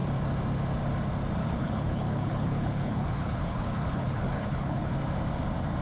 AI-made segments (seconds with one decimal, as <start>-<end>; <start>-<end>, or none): 1.4-4.9